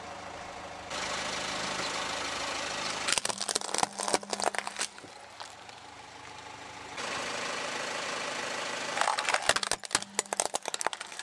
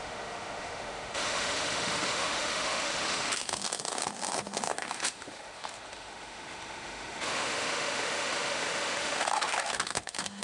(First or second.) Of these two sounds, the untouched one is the first